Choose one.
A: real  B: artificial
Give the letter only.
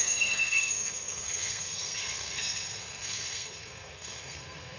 B